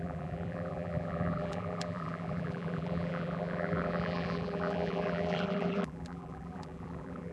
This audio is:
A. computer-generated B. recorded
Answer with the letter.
A